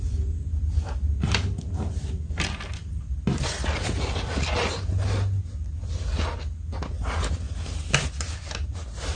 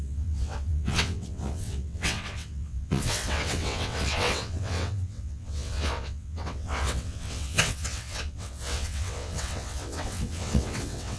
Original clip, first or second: first